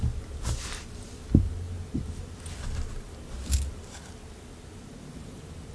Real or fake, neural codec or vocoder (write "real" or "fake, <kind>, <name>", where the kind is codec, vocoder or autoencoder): real